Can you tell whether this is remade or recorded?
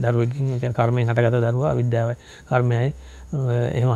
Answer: remade